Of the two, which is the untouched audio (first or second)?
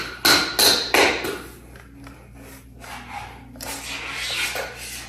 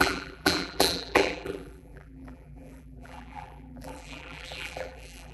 first